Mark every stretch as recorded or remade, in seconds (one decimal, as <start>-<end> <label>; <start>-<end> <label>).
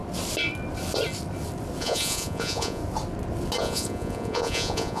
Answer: 0.0-1.8 recorded; 1.8-2.8 remade; 2.8-3.6 recorded; 3.6-5.0 remade